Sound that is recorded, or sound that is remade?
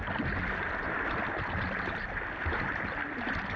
recorded